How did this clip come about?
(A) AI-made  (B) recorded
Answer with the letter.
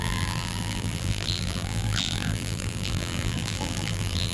A